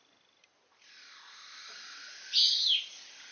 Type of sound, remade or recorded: recorded